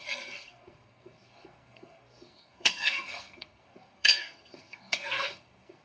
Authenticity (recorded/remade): remade